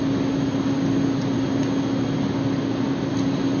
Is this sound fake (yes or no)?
no